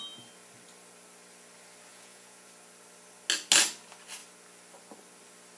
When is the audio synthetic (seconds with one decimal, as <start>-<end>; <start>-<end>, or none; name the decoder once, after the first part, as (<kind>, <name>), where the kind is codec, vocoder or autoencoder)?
1.9-2.5 (vocoder, Vocos)